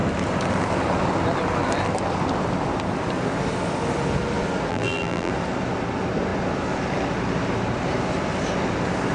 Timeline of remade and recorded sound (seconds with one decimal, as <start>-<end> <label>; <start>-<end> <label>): 0.0-4.7 recorded; 4.7-5.3 remade; 5.3-9.1 recorded